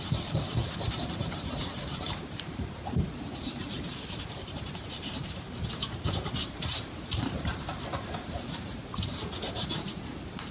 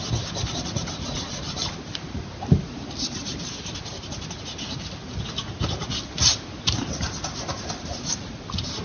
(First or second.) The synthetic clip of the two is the first